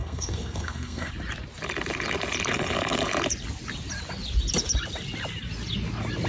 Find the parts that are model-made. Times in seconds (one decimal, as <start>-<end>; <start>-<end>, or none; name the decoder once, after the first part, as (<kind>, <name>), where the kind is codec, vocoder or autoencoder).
0.0-1.1 (codec, SNAC)